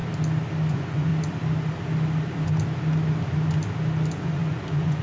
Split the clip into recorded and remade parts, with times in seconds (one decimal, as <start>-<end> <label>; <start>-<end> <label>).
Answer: 0.0-0.7 recorded; 0.7-1.1 remade; 1.1-4.1 recorded; 4.1-5.0 remade